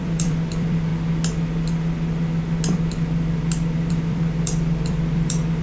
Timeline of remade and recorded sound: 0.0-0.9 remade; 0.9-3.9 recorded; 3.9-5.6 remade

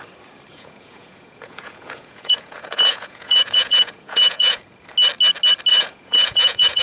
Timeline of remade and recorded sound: 0.0-0.5 recorded; 0.5-4.6 remade; 4.6-5.7 recorded; 5.7-6.8 remade

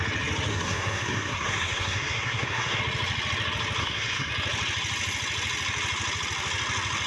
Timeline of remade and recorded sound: 0.0-0.5 recorded; 0.5-2.8 remade; 2.8-3.8 recorded; 3.8-4.3 remade; 4.3-7.1 recorded

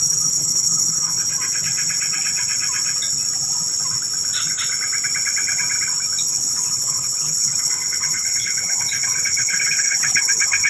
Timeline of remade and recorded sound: 0.0-1.2 remade; 1.2-6.2 recorded; 6.2-10.7 remade

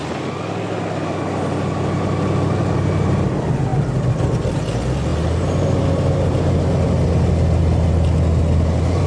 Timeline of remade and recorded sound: 0.0-9.1 recorded